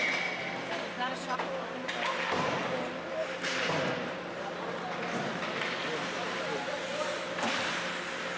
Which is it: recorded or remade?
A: recorded